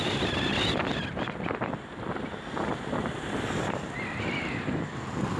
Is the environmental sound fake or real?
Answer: real